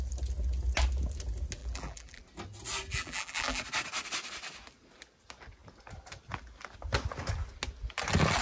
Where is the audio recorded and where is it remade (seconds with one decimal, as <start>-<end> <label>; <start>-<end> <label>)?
0.0-1.6 recorded; 1.6-2.2 remade; 2.2-2.9 recorded; 2.9-3.6 remade; 3.6-8.4 recorded